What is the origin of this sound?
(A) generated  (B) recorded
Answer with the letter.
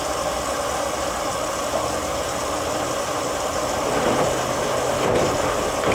B